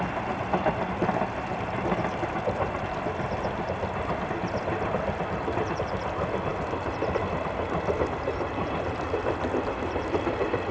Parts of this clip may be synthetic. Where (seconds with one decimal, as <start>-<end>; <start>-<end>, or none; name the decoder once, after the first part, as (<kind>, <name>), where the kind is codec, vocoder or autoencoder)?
none